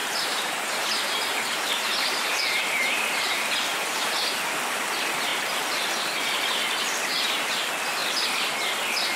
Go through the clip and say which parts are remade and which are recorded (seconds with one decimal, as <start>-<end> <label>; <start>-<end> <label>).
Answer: 0.0-4.3 remade; 4.3-9.2 recorded